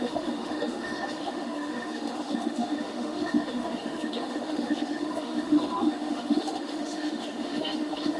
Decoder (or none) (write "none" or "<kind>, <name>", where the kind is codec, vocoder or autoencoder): autoencoder, DAC-VAE